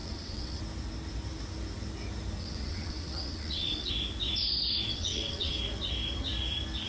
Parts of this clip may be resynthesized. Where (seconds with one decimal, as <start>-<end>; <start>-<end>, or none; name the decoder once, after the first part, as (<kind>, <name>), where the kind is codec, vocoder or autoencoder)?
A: 0.0-0.6 (vocoder, WaveNeXt); 2.4-3.9; 4.9-5.6